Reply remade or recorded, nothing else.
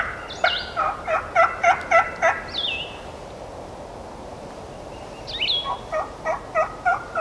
recorded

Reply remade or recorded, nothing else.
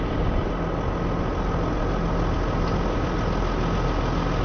recorded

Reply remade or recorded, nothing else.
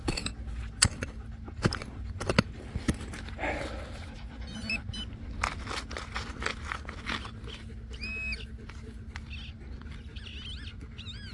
recorded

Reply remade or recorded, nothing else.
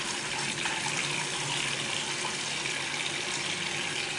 recorded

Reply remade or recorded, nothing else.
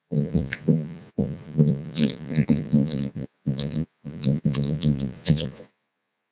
remade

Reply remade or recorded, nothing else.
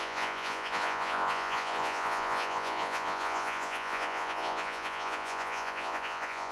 remade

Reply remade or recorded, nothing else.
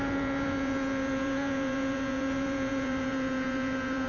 remade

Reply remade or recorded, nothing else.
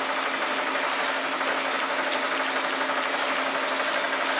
recorded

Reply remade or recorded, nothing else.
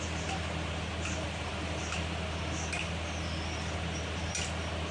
recorded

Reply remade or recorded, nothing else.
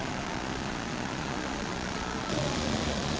remade